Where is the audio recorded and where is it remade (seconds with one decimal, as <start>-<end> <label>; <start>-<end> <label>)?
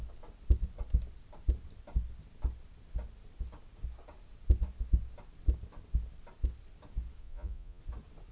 0.0-7.2 recorded; 7.2-7.8 remade; 7.8-8.3 recorded